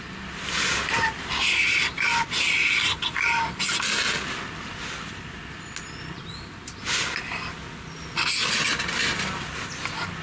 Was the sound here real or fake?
real